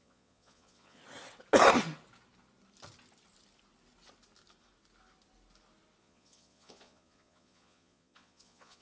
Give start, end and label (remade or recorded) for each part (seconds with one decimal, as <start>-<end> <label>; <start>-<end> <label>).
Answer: 0.0-1.0 remade; 1.0-6.0 recorded; 6.0-8.8 remade